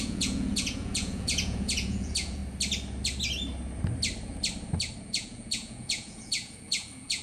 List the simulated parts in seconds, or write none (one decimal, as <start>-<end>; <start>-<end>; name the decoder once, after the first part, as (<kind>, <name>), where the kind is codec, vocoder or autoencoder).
0.0-2.4 (vocoder, Vocos); 5.0-7.2